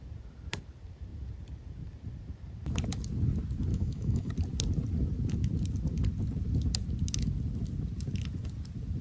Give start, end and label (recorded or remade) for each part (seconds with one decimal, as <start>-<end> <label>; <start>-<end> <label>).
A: 0.0-3.7 recorded; 3.7-4.3 remade; 4.3-9.0 recorded